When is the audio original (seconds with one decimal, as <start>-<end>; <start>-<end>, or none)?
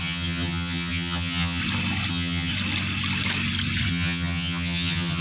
1.6-2.1; 2.5-3.9